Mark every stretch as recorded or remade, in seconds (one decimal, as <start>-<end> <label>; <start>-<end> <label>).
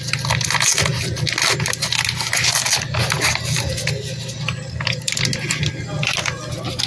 0.0-6.9 recorded